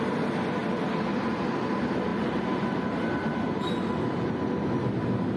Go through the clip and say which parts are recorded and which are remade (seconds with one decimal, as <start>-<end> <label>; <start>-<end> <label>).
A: 0.0-5.4 recorded